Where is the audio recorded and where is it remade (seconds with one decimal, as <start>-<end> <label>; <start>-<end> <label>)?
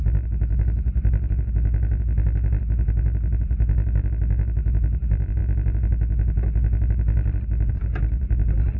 0.0-8.8 recorded